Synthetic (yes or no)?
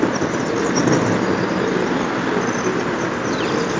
no